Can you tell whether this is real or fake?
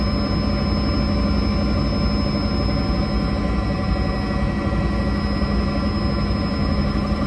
real